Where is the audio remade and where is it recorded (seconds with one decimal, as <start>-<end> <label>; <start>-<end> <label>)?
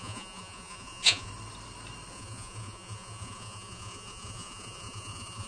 0.0-1.3 remade; 1.3-2.1 recorded; 2.1-5.5 remade